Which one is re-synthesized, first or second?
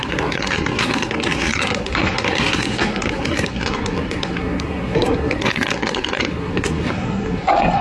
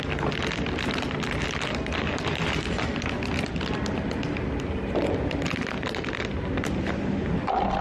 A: first